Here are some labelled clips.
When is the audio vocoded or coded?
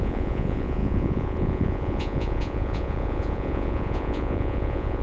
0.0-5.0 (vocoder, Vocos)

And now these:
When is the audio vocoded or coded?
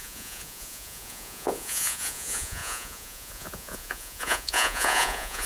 0.0-5.5 (vocoder, Vocos)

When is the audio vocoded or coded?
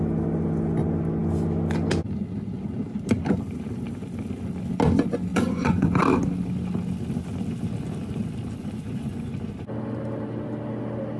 5.3-5.9 (vocoder, Vocos); 8.6-9.3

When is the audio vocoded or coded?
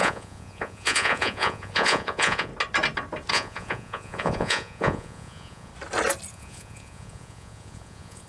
0.0-2.5 (vocoder, Vocos); 3.3-5.7; 6.3-8.3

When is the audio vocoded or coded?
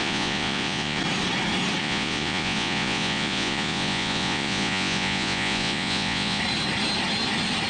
0.0-1.0 (vocoder, Vocos); 1.8-6.4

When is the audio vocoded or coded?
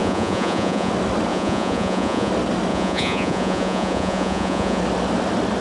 0.0-0.9 (vocoder, Vocos); 1.3-2.3; 2.7-4.8